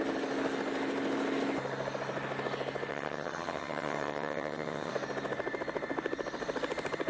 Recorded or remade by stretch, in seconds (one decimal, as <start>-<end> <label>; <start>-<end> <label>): 0.0-2.9 recorded; 2.9-4.9 remade; 4.9-7.1 recorded